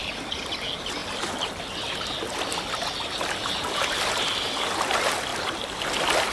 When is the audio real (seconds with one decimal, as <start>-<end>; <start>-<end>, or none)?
0.0-6.3